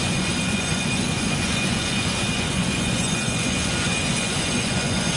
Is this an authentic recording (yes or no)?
no